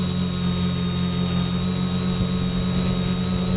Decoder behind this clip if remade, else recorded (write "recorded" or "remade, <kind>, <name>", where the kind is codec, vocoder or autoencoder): recorded